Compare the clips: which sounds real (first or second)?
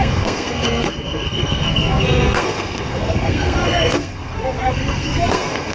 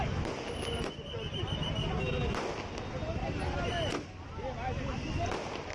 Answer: second